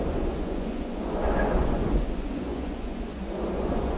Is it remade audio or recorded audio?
remade